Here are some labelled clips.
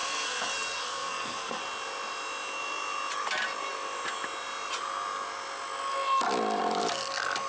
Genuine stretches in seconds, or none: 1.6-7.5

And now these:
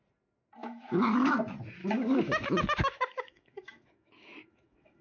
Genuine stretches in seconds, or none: 0.0-0.6; 1.4-1.8

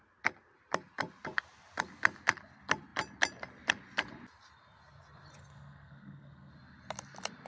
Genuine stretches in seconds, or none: 0.0-5.4; 6.5-7.5